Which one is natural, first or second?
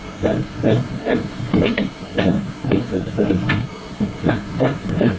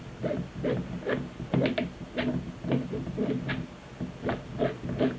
second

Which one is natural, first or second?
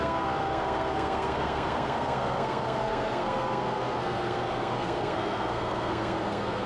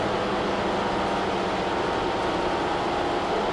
second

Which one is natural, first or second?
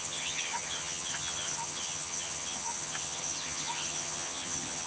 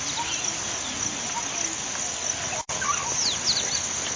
second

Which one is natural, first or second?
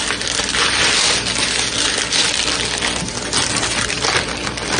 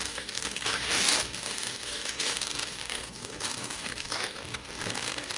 first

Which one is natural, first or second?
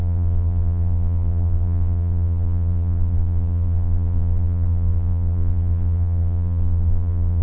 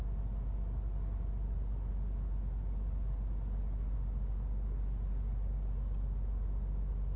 second